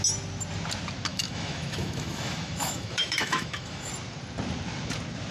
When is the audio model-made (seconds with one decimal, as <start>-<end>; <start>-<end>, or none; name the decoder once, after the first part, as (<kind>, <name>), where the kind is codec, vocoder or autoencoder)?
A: 1.1-3.9 (autoencoder, DAC-VAE)